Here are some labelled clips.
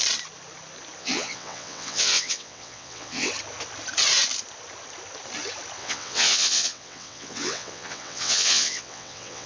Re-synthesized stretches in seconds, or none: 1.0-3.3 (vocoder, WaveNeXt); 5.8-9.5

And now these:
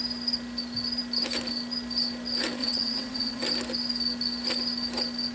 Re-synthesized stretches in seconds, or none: 2.6-3.4 (vocoder, WaveNeXt)

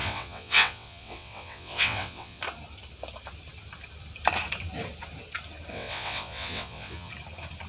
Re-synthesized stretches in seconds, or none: 0.0-2.4 (vocoder, WaveNeXt); 5.7-7.1

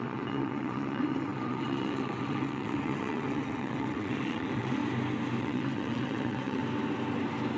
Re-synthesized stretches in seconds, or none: 0.0-4.8 (vocoder, WaveNeXt); 5.4-6.6

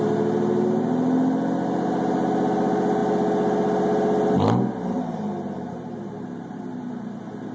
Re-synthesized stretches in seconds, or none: none

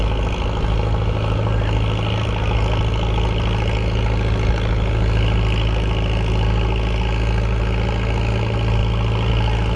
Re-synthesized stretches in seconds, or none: none